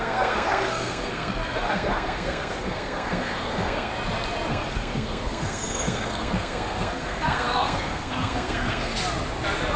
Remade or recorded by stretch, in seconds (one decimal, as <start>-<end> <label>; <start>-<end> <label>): 0.0-3.9 remade; 3.9-4.5 recorded; 4.5-8.9 remade; 8.9-9.8 recorded